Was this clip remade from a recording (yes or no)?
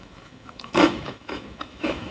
yes